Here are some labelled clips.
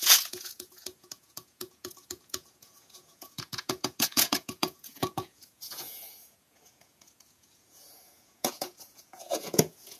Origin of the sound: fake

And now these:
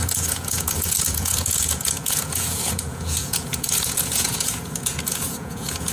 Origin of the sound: fake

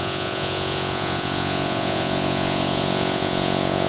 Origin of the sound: fake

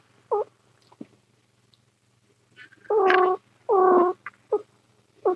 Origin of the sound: real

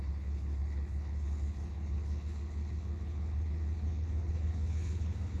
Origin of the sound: fake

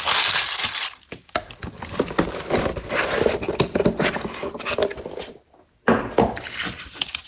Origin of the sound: real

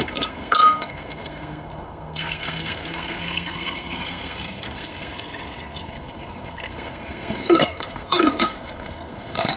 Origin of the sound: fake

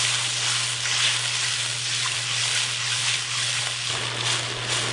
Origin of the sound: real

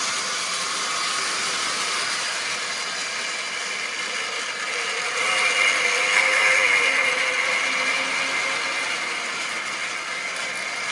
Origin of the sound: real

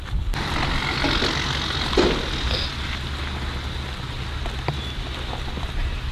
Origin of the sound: real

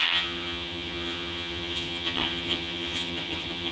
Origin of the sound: fake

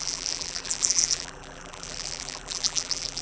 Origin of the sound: fake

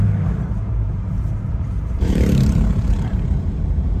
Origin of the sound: fake